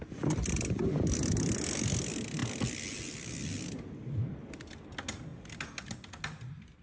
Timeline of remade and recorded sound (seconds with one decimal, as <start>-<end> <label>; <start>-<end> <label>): 0.0-6.8 recorded